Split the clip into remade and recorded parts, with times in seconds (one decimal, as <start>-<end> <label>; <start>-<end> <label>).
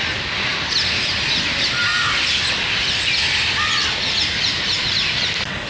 0.0-5.7 recorded